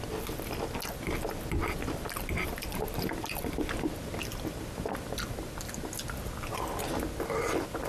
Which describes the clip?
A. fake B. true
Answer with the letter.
B